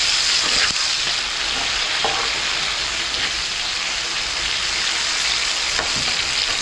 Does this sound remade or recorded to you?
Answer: recorded